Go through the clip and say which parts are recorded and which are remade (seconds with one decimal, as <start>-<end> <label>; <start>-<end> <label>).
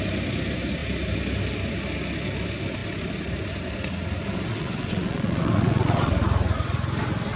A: 0.0-4.5 recorded; 4.5-6.1 remade; 6.1-7.4 recorded